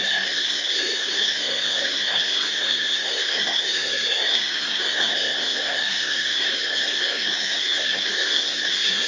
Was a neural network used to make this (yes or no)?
yes